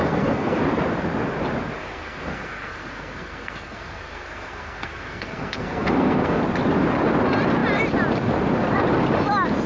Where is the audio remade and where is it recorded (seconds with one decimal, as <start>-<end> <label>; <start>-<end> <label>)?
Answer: 0.0-0.6 remade; 0.6-1.8 recorded; 1.8-6.4 remade; 6.4-9.7 recorded